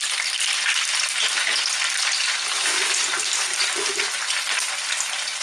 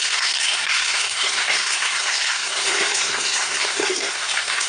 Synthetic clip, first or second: second